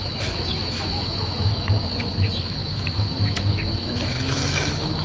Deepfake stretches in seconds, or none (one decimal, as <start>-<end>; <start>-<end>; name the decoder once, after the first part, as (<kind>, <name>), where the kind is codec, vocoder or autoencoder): 0.0-5.0 (autoencoder, DAC-VAE)